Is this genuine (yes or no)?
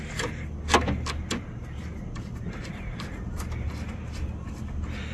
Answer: yes